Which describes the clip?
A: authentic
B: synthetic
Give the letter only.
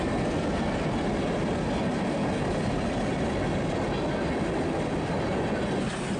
A